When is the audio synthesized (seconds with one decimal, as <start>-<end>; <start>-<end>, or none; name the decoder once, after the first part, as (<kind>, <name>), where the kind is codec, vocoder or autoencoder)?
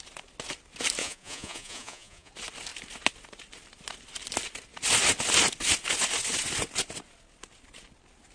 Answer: 1.0-2.3 (vocoder, Vocos)